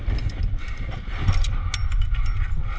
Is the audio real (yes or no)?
yes